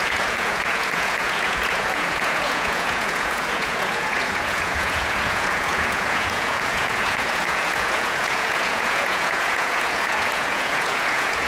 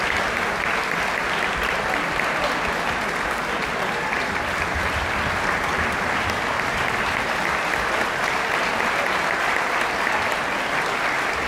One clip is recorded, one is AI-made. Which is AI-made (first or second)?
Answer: first